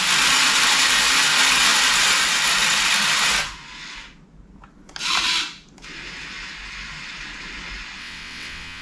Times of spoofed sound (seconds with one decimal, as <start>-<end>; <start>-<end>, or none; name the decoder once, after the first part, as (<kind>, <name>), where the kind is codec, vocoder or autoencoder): 8.0-8.8 (vocoder, WaveNeXt)